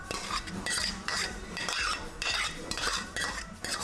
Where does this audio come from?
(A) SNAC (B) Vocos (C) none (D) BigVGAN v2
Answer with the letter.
D